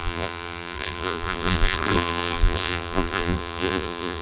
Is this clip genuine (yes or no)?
no